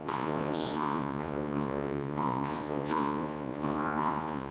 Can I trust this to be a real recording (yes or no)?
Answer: no